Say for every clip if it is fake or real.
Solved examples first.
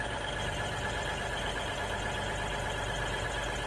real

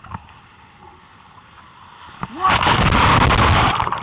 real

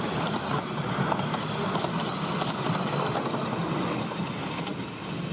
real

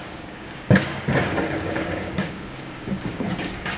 fake